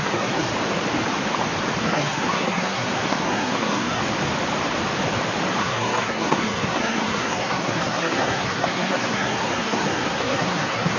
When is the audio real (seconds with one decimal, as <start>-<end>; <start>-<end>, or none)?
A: 0.5-1.8; 4.0-5.6